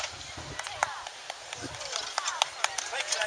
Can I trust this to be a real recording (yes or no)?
yes